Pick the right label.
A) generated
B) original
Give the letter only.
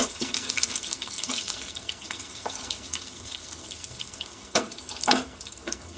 A